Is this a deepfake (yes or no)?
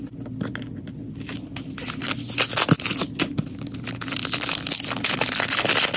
no